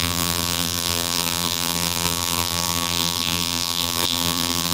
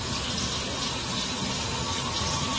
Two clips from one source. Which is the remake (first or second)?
first